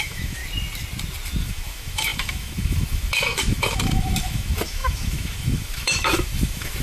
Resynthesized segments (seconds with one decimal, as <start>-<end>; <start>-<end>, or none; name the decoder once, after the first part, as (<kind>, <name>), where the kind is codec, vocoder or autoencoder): 0.0-0.4 (autoencoder, DAC-VAE); 1.4-6.8